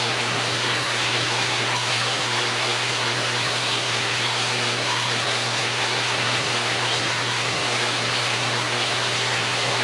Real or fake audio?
fake